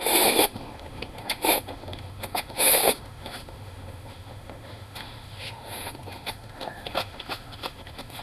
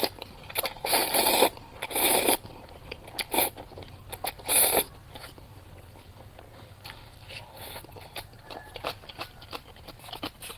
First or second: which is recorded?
second